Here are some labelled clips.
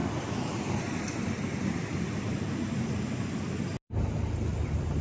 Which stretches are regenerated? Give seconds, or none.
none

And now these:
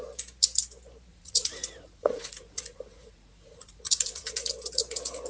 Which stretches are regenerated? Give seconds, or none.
1.1-4.3 (vocoder, Vocos)

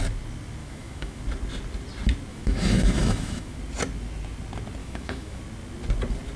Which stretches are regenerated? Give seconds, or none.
0.6-1.2 (autoencoder, DAC-VAE); 2.3-3.6; 4.8-5.4

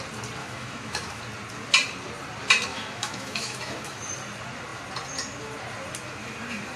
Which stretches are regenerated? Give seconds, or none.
0.4-1.2 (autoencoder, DAC-VAE); 2.7-4.0

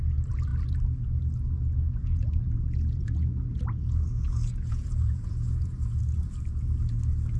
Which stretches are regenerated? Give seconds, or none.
2.0-6.0 (vocoder, Vocos)

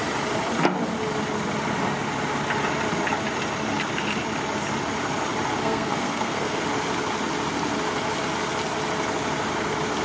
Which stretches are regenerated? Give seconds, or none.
5.6-6.6 (codec, SNAC)

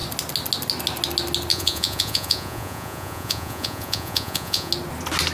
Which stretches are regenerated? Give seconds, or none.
1.5-4.7 (vocoder, Vocos)